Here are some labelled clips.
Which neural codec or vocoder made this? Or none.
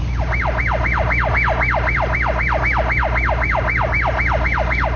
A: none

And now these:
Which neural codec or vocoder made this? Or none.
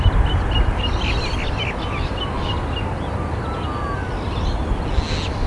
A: none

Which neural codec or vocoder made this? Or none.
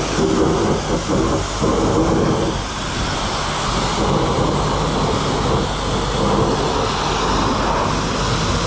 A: none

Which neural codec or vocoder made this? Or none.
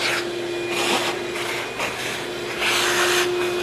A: none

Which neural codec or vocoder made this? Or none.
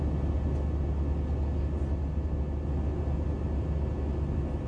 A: none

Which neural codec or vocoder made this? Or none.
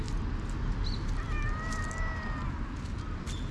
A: none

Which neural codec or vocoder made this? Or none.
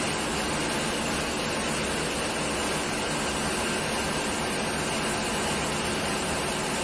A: none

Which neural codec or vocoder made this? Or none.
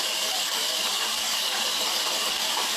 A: codec, DAC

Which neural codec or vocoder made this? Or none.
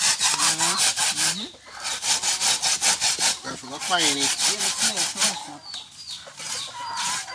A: none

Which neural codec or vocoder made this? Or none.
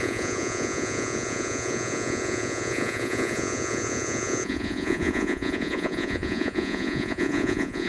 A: vocoder, Vocos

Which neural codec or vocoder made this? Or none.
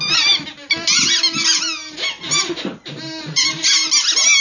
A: none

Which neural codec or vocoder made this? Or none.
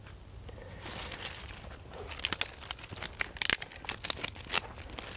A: none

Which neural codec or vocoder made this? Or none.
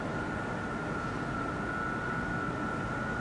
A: none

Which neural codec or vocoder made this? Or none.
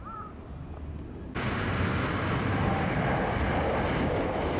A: none